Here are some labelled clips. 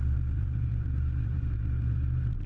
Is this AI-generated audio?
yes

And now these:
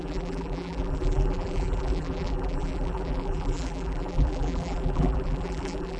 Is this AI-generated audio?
yes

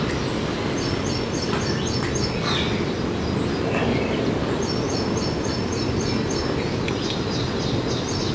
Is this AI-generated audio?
no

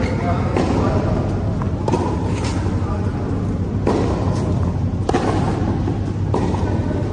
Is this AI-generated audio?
no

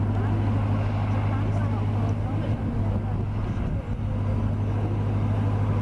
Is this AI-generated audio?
no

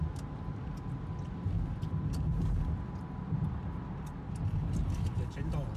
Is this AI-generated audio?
no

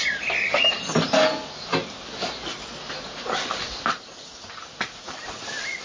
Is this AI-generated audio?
no